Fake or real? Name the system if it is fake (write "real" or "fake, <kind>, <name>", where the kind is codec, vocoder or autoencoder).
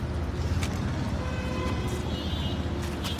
real